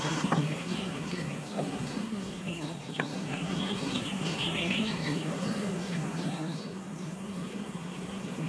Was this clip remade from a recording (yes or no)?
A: yes